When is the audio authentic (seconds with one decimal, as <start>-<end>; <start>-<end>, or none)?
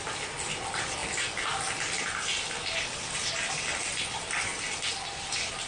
0.0-5.7